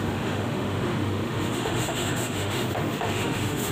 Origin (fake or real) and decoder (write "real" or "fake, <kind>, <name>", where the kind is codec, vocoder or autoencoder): fake, autoencoder, DAC-VAE